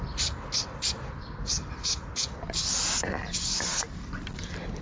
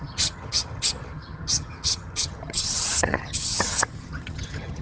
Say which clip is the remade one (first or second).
second